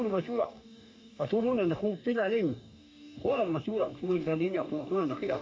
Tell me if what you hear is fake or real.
fake